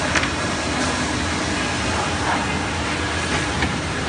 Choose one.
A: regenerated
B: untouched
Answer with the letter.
B